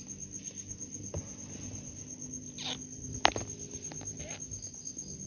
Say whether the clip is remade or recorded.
recorded